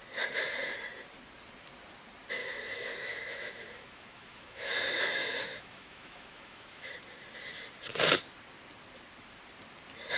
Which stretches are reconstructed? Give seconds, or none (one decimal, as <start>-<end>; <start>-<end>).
2.4-6.9